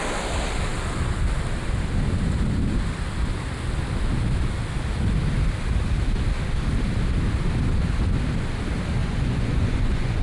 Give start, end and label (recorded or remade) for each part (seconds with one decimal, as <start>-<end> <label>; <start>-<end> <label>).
0.0-9.0 recorded; 9.0-10.2 remade